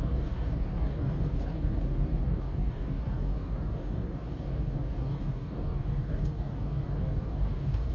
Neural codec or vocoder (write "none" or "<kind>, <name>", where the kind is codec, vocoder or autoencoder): codec, DAC